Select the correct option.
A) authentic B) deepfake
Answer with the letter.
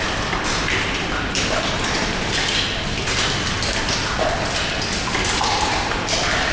A